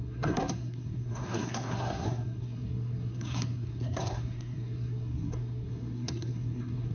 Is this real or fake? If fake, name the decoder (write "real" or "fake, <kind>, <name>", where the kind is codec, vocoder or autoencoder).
fake, codec, SNAC